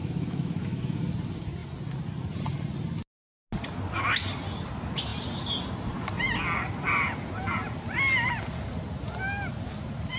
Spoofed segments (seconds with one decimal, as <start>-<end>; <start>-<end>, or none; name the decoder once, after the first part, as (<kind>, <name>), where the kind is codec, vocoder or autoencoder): 0.0-1.0 (autoencoder, DAC-VAE)